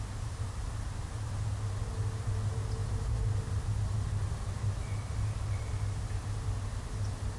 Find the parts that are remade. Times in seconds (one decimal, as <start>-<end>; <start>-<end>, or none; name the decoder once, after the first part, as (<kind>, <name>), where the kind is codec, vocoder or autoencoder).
0.0-7.4 (vocoder, BigVGAN v2)